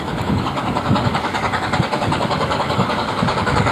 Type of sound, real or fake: fake